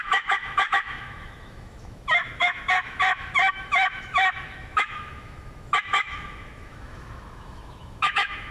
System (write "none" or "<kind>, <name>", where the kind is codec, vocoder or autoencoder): autoencoder, DAC-VAE